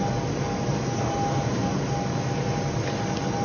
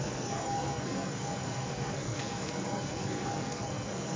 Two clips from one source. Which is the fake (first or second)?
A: second